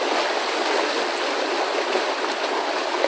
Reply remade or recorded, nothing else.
recorded